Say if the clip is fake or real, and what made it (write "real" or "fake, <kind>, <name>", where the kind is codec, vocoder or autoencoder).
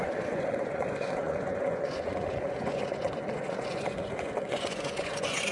fake, vocoder, Vocos